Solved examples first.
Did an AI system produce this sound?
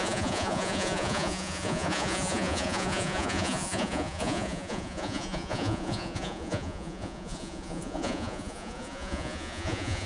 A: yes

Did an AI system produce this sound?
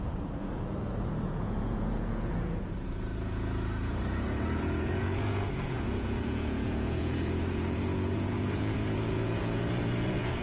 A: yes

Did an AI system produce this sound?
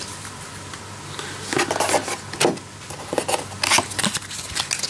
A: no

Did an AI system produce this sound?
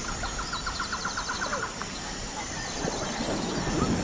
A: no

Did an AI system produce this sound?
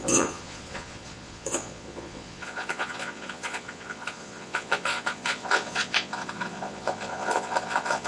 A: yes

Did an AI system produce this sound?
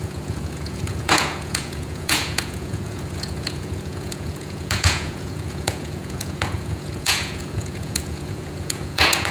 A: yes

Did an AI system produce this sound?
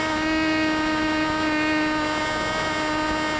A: no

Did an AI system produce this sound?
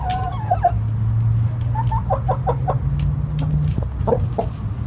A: no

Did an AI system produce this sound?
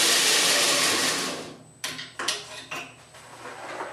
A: no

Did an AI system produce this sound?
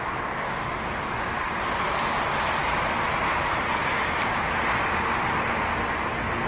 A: no